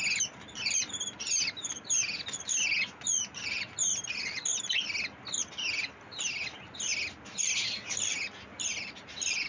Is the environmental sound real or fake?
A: real